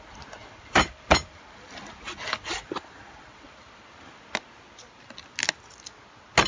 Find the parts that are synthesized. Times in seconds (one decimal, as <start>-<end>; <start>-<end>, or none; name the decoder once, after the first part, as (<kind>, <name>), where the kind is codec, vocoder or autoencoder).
0.4-3.8 (vocoder, BigVGAN v2)